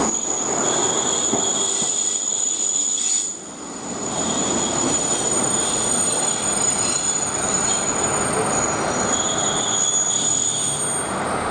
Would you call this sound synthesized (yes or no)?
no